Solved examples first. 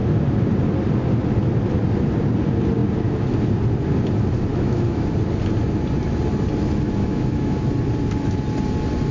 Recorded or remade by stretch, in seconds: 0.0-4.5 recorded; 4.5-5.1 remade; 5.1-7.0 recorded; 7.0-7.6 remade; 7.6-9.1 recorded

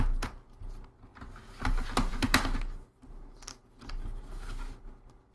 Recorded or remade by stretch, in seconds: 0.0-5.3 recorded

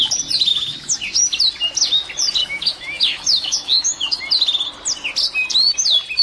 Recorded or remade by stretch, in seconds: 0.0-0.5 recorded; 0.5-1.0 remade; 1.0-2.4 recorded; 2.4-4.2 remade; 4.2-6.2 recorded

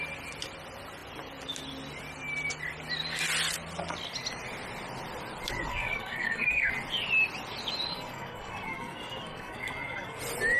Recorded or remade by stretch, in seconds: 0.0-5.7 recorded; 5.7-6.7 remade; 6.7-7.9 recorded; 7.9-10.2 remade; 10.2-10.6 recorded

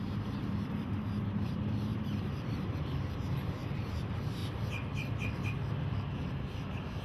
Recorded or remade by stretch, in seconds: 0.0-4.4 remade; 4.4-7.0 recorded